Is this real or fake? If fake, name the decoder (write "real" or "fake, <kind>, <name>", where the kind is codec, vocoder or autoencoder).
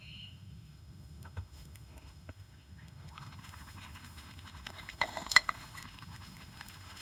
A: fake, autoencoder, DAC-VAE